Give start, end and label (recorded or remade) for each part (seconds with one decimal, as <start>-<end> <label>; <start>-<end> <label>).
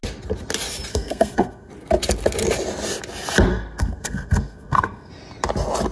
0.0-0.9 recorded; 0.9-1.7 remade; 1.7-3.5 recorded; 3.5-5.1 remade; 5.1-5.9 recorded